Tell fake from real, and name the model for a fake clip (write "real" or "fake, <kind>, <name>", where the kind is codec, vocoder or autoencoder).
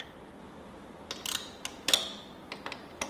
real